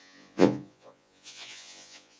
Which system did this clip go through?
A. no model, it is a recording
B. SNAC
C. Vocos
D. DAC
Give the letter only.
C